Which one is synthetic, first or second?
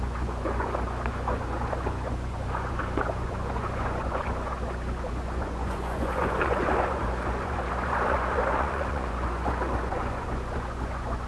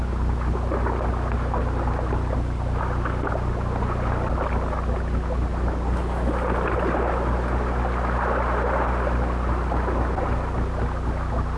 first